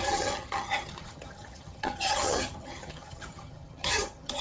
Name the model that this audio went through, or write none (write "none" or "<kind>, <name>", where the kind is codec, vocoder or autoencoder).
vocoder, HiFi-GAN